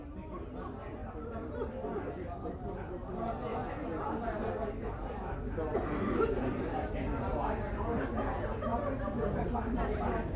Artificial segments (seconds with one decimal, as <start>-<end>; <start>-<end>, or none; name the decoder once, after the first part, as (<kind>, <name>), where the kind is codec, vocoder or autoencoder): none